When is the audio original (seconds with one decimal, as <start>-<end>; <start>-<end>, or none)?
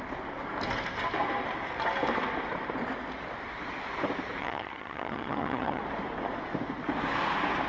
0.0-4.4; 5.8-7.7